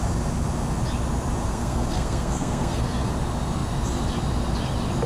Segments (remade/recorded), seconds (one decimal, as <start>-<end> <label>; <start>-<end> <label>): 0.0-1.4 recorded; 1.4-3.1 remade; 3.1-5.1 recorded